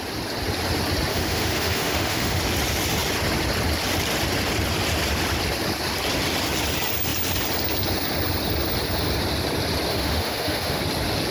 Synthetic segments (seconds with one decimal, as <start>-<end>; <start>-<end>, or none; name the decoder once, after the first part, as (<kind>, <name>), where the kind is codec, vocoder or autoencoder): 1.1-2.4 (autoencoder, DAC-VAE); 9.9-10.8